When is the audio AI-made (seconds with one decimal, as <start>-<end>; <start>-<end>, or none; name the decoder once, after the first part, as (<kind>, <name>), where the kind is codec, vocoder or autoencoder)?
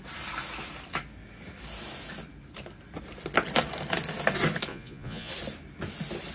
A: 4.7-5.3 (vocoder, Vocos)